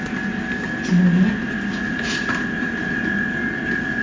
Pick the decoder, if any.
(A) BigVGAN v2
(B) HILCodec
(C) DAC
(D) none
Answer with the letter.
D